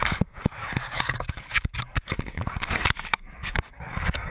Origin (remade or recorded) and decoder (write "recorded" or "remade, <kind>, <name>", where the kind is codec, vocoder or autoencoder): remade, codec, DAC